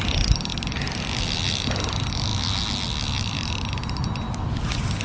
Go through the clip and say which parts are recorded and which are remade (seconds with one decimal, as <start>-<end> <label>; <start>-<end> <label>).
0.0-5.0 recorded